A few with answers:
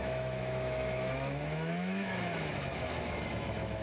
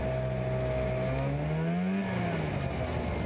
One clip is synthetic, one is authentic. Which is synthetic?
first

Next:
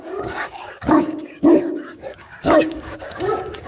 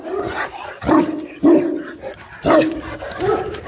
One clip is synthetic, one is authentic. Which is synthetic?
first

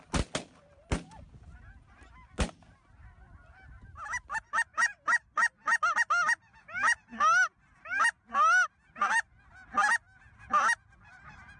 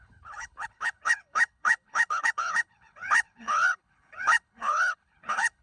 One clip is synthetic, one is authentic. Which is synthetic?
second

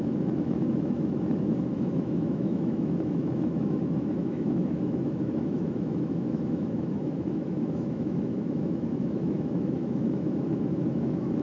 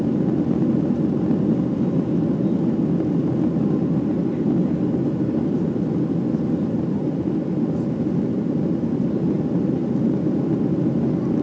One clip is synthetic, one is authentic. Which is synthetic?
first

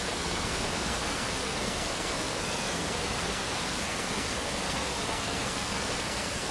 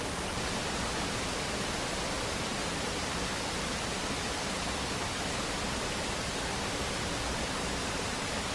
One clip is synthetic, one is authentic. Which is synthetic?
first